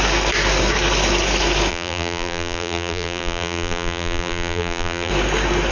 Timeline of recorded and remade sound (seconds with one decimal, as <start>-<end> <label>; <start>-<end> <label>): 0.0-1.7 recorded; 1.7-5.1 remade; 5.1-5.7 recorded